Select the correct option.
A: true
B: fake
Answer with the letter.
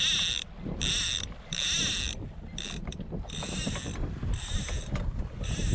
A